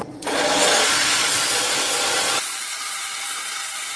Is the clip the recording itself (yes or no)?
no